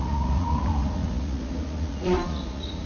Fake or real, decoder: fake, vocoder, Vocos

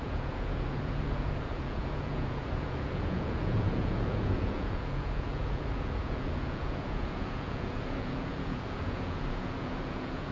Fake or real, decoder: fake, vocoder, Vocos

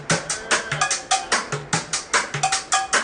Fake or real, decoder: real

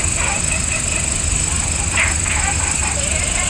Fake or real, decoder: real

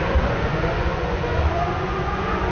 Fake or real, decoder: fake, vocoder, Vocos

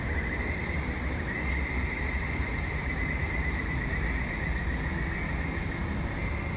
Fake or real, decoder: real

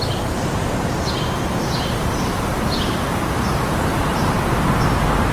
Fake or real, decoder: real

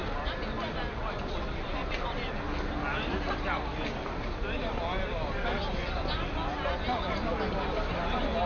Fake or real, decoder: real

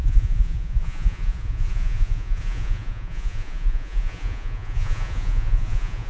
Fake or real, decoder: fake, vocoder, Vocos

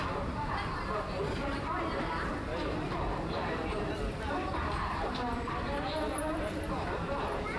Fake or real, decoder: real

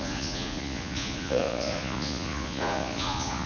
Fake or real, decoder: fake, vocoder, Vocos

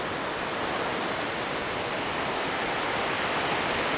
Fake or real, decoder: real